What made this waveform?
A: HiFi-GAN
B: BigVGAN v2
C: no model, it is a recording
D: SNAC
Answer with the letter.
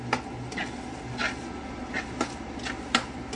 C